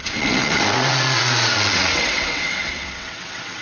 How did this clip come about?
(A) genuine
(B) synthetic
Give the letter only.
B